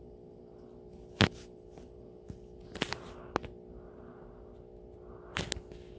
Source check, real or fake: real